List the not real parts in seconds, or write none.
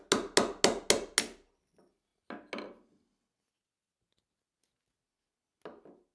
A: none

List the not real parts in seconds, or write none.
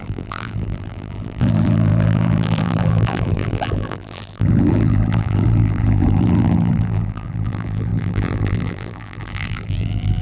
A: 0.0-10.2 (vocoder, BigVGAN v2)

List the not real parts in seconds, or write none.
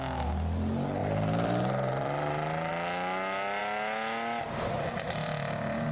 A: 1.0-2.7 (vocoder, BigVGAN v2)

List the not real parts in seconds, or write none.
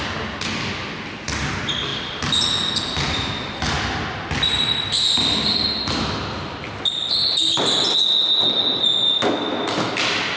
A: none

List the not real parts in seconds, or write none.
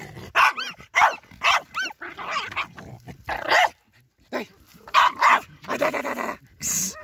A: 4.7-6.0 (vocoder, BigVGAN v2)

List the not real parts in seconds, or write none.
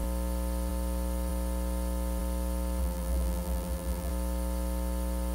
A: 2.8-4.1 (vocoder, BigVGAN v2)